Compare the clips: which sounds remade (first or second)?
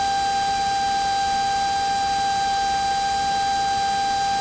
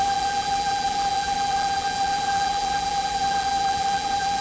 second